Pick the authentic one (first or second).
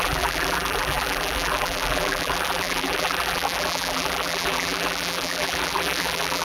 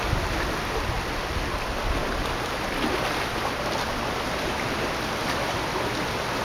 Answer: second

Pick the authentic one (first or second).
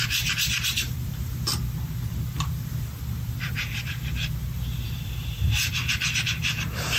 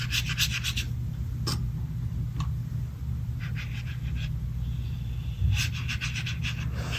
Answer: second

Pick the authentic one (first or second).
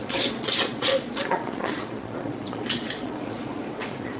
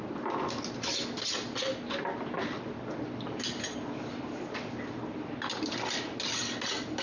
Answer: second